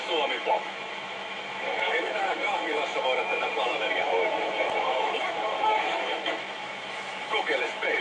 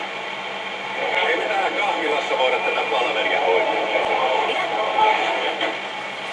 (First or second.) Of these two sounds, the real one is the second